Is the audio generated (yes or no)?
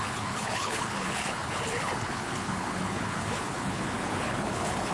yes